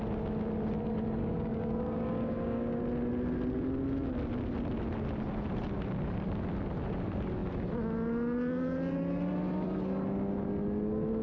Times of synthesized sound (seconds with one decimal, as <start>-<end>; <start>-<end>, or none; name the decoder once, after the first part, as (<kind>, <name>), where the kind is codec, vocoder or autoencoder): 1.2-2.8 (codec, DAC)